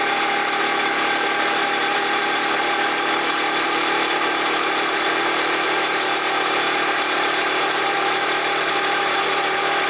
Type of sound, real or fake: fake